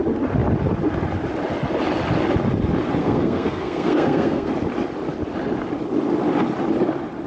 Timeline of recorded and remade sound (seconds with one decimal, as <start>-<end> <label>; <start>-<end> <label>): 0.0-3.0 recorded; 3.0-4.5 remade; 4.5-7.3 recorded